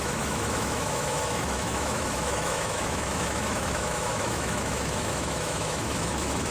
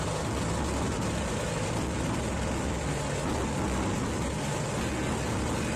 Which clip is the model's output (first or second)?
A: first